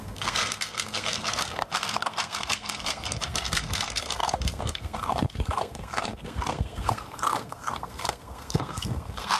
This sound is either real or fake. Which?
fake